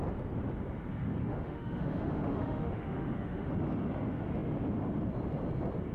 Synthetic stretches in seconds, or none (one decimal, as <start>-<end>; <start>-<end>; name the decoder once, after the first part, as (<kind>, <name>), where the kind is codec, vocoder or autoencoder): 1.2-3.5 (autoencoder, DAC-VAE)